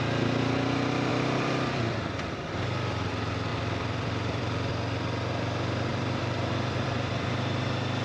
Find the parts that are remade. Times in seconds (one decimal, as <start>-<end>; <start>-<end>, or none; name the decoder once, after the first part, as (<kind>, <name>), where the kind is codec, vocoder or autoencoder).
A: 1.1-3.1 (vocoder, BigVGAN v2); 3.5-4.7; 5.9-7.3

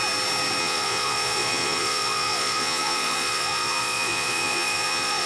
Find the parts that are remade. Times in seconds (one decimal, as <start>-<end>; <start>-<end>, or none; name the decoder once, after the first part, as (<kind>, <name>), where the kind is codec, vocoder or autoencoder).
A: 0.6-5.3 (vocoder, Vocos)